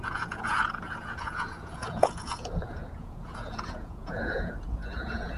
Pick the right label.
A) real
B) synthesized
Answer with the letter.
B